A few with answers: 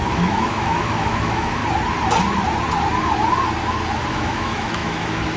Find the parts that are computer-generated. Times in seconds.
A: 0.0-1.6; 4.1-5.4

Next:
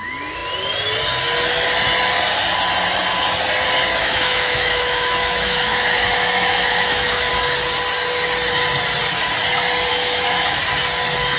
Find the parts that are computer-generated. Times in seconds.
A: 4.0-7.3; 9.9-10.6

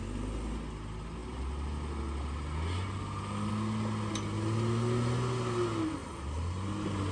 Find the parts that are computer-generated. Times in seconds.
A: none

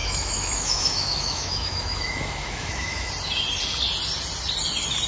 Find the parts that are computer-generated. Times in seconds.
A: 0.0-3.1